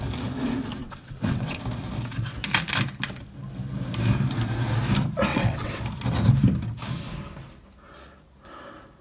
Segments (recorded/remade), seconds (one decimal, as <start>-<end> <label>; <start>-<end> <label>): 0.0-0.8 recorded; 0.8-1.6 remade; 1.6-5.3 recorded; 5.3-5.8 remade; 5.8-9.0 recorded